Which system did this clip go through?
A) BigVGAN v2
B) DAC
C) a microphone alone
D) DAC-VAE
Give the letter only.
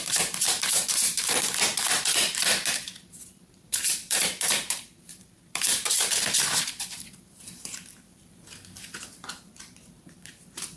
A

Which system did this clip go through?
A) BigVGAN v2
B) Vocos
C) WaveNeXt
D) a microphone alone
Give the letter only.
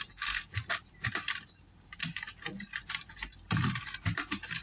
A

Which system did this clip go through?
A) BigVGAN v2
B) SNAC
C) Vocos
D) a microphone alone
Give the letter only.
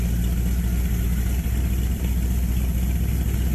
A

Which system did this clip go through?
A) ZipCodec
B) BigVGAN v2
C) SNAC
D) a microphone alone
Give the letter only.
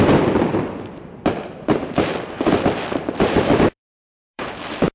B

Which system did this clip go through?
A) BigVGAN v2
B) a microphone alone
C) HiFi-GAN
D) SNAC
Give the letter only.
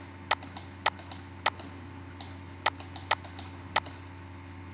B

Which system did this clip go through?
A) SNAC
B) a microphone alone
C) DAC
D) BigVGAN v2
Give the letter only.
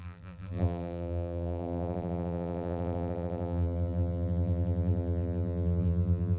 D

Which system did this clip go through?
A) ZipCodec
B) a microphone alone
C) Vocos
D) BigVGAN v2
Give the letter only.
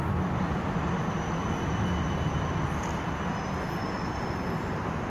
B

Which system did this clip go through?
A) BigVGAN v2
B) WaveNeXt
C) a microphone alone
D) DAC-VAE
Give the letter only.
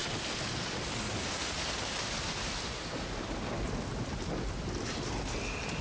C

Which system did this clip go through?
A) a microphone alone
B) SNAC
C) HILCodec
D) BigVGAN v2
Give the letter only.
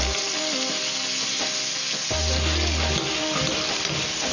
A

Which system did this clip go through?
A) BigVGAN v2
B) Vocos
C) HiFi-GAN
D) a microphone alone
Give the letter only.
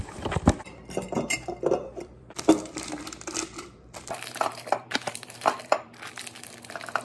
A